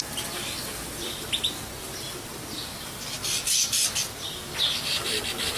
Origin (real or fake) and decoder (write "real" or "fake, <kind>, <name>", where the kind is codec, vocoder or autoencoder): real